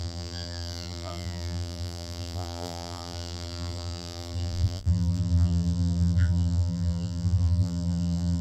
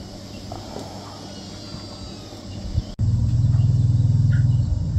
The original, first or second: second